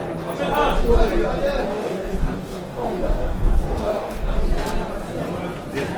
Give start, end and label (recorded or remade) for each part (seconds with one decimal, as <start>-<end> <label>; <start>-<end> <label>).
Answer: 0.0-1.6 recorded; 1.6-4.4 remade; 4.4-6.0 recorded